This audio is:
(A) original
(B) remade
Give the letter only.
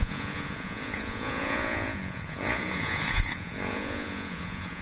B